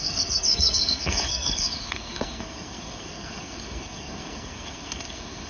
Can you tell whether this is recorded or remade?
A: remade